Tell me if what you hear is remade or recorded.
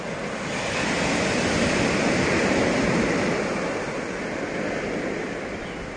recorded